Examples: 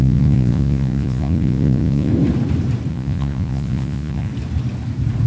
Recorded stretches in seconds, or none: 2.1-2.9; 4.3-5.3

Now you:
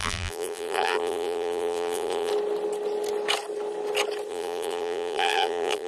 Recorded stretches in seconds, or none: 2.3-4.3